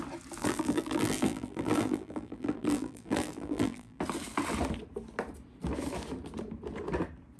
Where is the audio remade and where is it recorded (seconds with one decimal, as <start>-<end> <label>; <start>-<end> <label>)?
0.0-0.4 recorded; 0.4-4.0 remade; 4.0-7.4 recorded